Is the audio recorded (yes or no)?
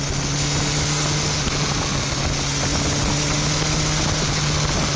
yes